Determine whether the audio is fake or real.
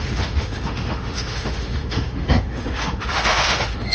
fake